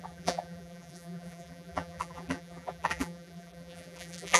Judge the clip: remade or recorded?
remade